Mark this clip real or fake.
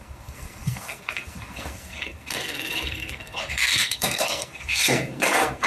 fake